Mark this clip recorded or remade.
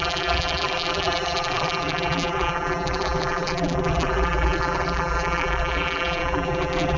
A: remade